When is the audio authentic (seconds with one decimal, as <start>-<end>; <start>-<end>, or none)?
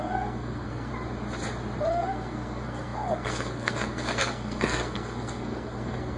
0.9-1.9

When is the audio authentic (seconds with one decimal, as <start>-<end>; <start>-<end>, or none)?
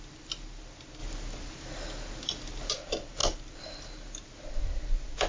0.0-5.3